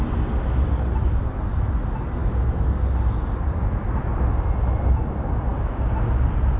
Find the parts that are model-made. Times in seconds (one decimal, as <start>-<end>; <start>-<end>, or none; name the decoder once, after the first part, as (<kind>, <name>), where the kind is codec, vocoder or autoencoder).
none